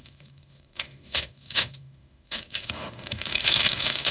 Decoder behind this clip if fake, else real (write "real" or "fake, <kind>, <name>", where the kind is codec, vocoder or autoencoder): fake, autoencoder, DAC-VAE